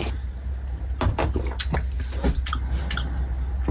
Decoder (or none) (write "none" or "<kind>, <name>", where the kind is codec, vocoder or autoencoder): none